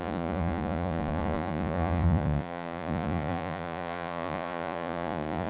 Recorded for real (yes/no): no